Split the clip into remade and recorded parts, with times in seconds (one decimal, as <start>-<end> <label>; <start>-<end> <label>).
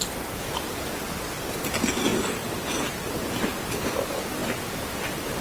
0.0-5.4 recorded